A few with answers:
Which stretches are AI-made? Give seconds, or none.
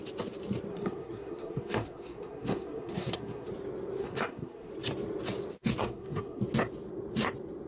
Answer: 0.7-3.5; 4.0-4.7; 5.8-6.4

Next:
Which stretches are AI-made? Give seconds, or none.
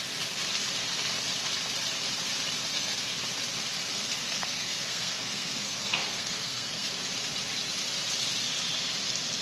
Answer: 2.7-3.2; 3.9-6.9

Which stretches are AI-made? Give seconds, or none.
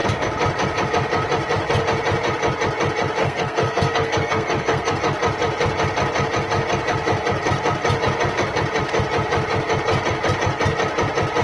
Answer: 3.2-5.0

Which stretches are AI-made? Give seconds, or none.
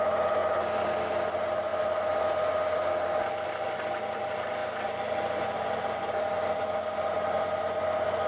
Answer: none